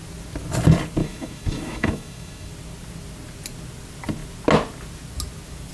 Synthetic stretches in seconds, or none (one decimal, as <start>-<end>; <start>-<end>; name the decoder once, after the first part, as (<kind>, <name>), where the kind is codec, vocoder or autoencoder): 1.0-2.5 (autoencoder, DAC-VAE)

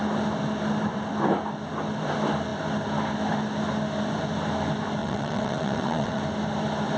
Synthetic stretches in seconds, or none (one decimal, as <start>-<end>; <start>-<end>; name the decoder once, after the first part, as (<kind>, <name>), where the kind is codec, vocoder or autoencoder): 5.0-6.2 (vocoder, WaveNeXt)